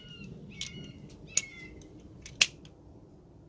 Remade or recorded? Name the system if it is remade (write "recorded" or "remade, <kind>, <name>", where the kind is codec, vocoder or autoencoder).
recorded